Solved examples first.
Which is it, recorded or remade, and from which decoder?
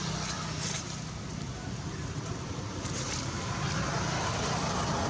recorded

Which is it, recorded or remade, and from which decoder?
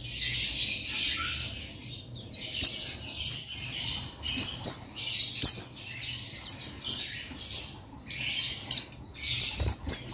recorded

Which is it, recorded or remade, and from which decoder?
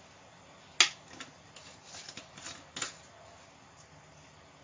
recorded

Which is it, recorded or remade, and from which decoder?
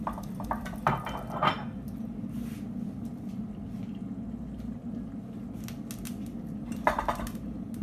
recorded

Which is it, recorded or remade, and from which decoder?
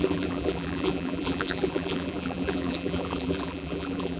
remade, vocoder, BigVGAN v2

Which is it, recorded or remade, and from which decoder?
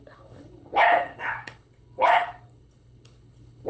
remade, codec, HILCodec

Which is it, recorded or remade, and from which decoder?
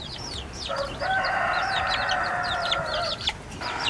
remade, vocoder, BigVGAN v2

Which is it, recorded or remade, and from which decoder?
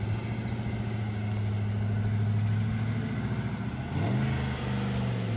recorded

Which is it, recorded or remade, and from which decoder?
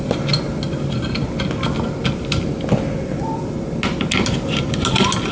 recorded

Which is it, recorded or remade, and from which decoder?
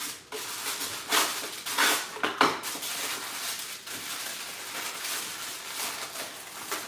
recorded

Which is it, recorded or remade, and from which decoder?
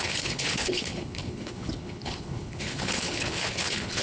remade, codec, HILCodec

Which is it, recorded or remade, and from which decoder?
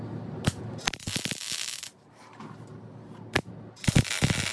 recorded